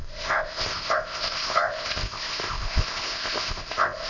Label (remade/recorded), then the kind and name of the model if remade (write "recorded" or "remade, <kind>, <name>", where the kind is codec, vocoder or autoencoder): remade, codec, ZipCodec